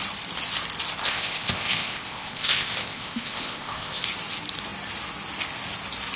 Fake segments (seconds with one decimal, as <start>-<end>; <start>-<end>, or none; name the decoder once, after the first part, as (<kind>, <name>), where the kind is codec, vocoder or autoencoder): 1.0-4.0 (codec, ZipCodec)